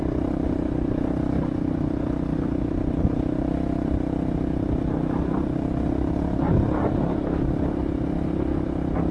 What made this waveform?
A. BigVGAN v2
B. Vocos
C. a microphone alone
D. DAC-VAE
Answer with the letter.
C